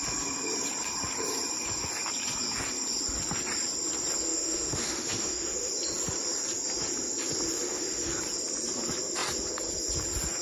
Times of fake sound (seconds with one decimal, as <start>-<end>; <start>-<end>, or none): 4.3-5.7; 7.5-8.1